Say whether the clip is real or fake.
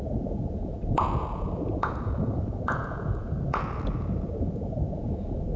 fake